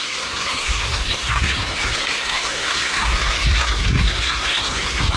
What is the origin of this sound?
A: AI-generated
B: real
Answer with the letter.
A